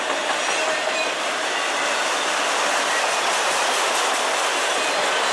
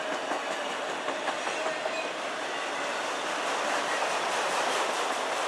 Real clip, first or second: first